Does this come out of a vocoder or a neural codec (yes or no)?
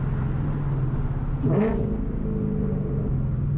no